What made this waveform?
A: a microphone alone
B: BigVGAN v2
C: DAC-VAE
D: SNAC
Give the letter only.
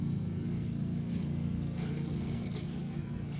D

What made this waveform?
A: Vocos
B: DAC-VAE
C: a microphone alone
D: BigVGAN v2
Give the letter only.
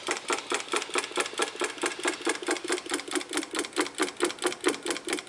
C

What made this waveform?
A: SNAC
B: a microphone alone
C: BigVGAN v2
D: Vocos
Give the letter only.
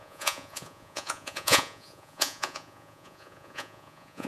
D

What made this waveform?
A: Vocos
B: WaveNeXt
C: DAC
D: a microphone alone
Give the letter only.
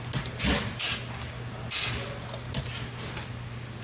D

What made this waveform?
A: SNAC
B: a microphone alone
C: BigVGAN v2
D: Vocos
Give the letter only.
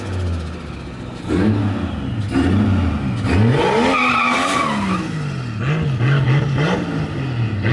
B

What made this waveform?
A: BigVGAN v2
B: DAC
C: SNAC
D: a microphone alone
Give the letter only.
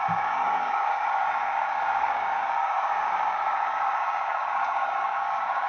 B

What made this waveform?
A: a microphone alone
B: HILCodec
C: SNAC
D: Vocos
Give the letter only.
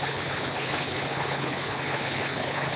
B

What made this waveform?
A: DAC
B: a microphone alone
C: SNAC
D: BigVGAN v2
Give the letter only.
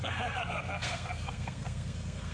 C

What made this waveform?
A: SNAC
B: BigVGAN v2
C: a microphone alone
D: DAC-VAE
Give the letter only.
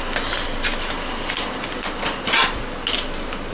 C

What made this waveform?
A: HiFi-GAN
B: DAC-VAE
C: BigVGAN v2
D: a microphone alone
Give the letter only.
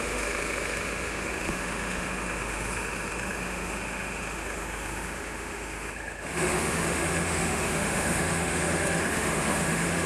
B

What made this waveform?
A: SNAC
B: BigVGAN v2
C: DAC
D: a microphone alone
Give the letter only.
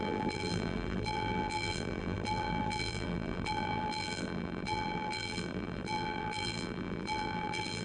B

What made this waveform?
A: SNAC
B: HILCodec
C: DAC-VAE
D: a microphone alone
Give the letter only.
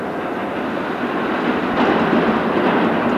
D